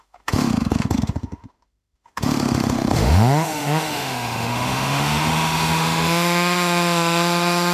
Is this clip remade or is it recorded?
remade